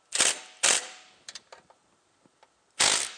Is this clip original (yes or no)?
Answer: no